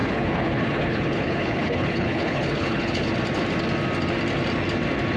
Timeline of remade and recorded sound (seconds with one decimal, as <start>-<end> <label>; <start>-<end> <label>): 0.0-3.1 remade; 3.1-5.2 recorded